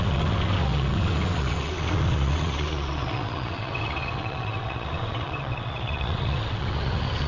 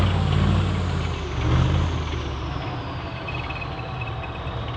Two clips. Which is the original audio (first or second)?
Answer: second